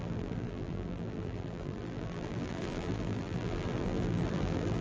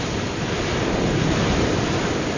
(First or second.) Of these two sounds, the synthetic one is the first